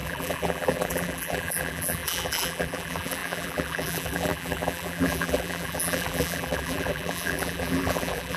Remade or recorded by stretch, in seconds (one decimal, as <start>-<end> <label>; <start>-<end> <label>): 0.0-8.4 remade